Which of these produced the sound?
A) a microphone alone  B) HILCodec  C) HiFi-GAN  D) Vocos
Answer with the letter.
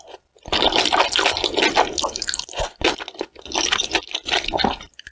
A